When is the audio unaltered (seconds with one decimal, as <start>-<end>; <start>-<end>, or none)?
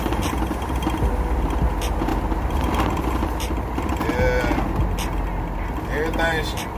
0.0-6.8